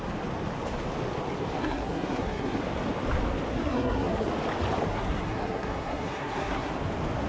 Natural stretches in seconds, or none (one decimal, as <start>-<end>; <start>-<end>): 0.0-1.6; 2.6-3.5; 4.3-4.9; 6.7-7.3